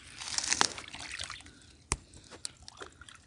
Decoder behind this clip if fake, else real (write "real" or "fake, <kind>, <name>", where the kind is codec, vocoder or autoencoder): real